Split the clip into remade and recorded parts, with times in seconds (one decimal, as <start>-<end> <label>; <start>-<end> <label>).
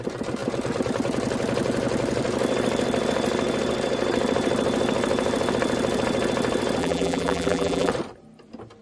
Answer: 0.0-6.8 recorded; 6.8-7.9 remade; 7.9-8.8 recorded